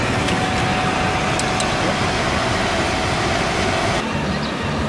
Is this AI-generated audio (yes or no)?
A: no